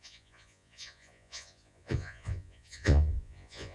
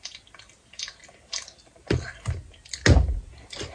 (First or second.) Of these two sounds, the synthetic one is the first